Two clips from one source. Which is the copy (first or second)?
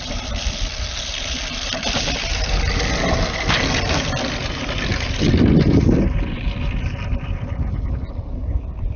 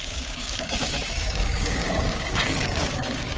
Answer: second